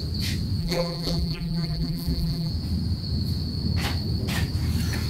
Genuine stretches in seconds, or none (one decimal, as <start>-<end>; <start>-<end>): 0.0-0.6; 2.5-5.1